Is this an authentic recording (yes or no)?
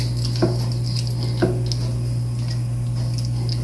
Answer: yes